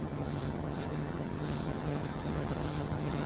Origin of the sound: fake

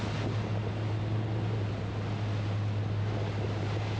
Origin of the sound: real